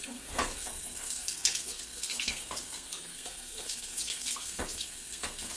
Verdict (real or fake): fake